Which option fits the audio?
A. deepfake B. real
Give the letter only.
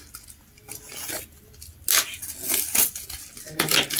B